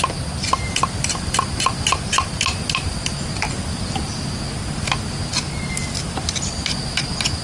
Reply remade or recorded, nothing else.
recorded